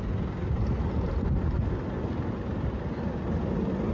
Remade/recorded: recorded